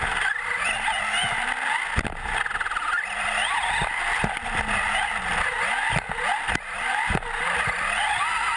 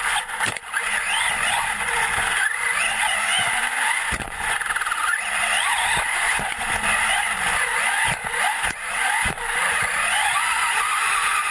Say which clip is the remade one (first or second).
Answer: second